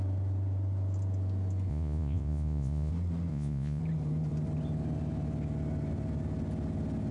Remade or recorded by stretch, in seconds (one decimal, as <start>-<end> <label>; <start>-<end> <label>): 0.0-1.7 recorded; 1.7-2.9 remade; 2.9-3.3 recorded; 3.3-3.8 remade; 3.8-7.1 recorded